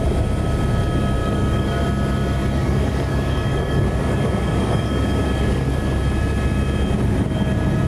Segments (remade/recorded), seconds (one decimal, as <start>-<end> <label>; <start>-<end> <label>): 0.0-1.2 recorded; 1.2-1.8 remade; 1.8-2.6 recorded; 2.6-6.0 remade; 6.0-7.9 recorded